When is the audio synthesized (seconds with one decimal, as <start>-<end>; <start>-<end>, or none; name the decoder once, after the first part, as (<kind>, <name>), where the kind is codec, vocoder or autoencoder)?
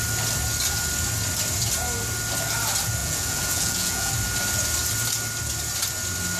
3.0-4.1 (vocoder, Vocos)